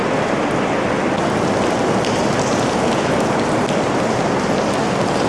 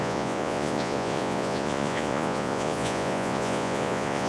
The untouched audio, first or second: first